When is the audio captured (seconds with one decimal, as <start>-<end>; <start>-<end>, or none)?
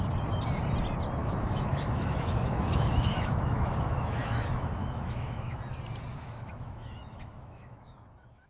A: 0.0-1.2; 5.6-6.1